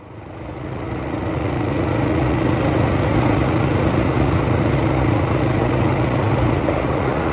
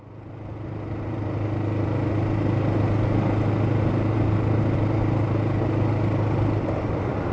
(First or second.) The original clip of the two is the second